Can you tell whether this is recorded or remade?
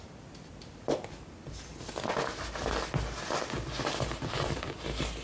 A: recorded